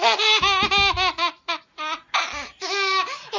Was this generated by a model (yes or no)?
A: no